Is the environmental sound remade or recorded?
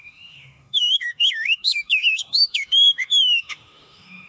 remade